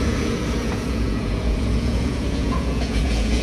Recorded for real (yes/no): no